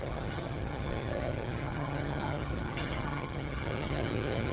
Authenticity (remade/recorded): remade